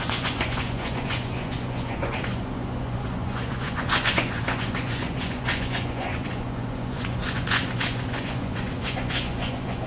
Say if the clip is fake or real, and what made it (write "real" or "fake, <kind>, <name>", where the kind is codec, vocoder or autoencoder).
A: fake, vocoder, Vocos